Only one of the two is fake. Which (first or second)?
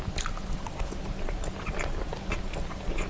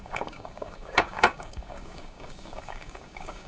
second